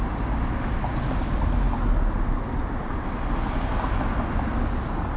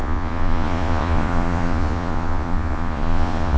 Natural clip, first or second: first